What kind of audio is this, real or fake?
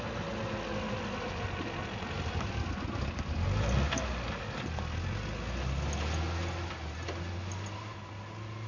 real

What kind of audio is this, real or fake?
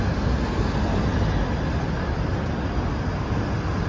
real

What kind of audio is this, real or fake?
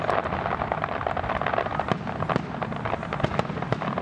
real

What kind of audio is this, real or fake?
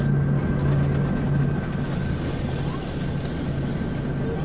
real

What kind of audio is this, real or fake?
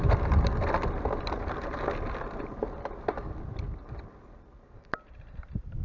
real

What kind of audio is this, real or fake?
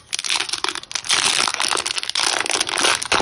real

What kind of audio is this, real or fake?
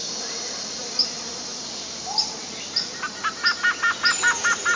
real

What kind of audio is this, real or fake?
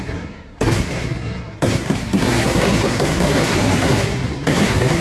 fake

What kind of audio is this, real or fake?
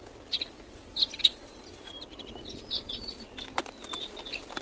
real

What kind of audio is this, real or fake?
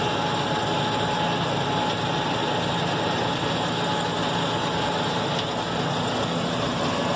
real